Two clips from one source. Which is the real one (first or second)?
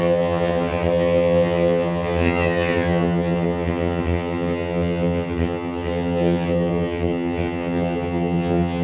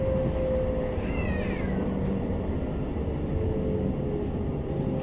second